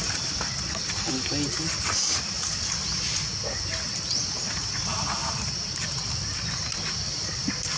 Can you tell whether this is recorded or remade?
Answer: recorded